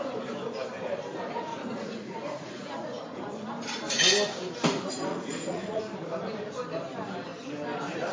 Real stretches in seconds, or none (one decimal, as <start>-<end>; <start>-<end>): 0.0-1.5; 3.3-5.1; 5.8-8.1